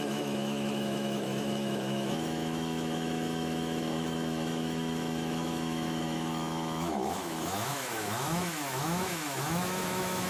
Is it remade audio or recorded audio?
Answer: remade